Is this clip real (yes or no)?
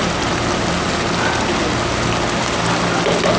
yes